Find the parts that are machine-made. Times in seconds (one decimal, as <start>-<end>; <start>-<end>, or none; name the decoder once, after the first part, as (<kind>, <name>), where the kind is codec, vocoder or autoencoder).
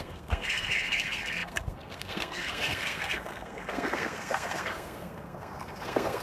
0.0-6.2 (codec, SNAC)